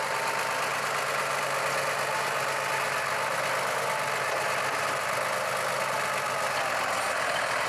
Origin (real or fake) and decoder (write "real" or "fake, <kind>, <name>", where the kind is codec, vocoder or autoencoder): real